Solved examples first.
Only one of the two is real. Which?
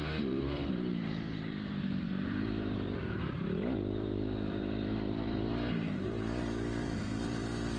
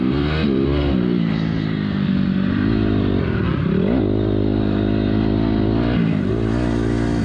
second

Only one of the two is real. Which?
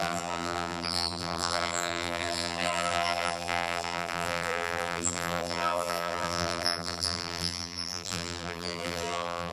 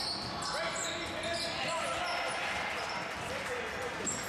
second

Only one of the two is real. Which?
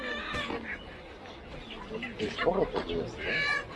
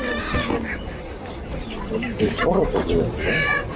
first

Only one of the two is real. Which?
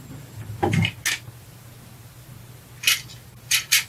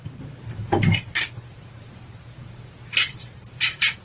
first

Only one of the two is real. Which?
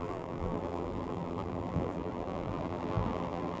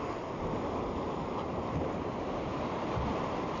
second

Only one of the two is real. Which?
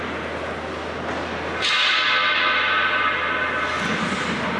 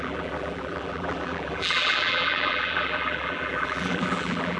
first